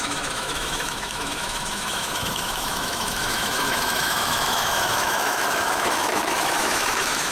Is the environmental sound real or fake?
fake